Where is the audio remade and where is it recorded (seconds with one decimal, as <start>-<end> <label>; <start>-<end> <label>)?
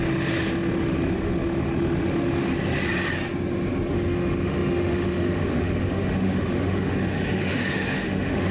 0.0-2.5 remade; 2.5-3.9 recorded; 3.9-8.5 remade